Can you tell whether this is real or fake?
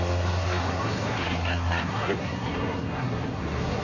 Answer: fake